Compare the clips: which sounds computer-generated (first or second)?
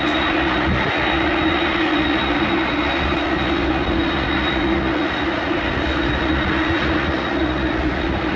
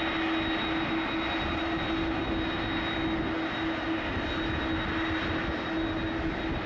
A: first